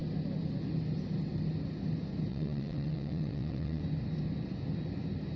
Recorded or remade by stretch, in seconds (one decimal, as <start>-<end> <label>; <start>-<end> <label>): 0.0-2.3 recorded; 2.3-3.8 remade; 3.8-5.4 recorded